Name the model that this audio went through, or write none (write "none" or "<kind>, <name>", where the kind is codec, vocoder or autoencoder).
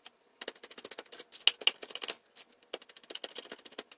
none